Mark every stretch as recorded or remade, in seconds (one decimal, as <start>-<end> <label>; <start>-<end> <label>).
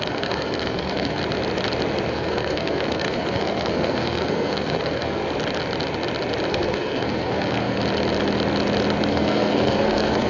0.0-1.2 remade; 1.2-2.1 recorded; 2.1-5.2 remade; 5.2-6.5 recorded; 6.5-7.8 remade; 7.8-9.1 recorded; 9.1-10.3 remade